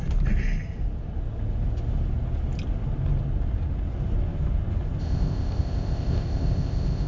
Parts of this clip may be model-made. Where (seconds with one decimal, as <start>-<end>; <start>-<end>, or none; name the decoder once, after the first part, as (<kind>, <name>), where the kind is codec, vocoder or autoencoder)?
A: 5.0-7.1 (codec, ZipCodec)